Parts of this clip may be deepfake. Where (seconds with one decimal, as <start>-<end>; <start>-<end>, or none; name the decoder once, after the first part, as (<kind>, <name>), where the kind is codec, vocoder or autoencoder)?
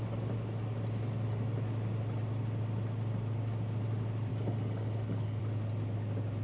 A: 4.3-5.4 (codec, DAC)